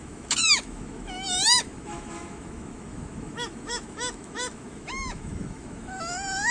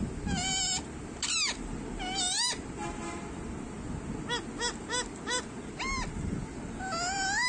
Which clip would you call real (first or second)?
second